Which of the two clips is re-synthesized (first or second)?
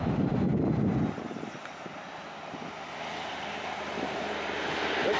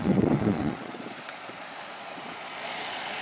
second